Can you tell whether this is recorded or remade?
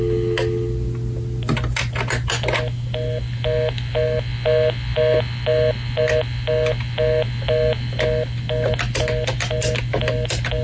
recorded